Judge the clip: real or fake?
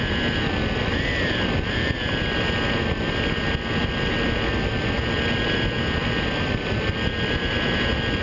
real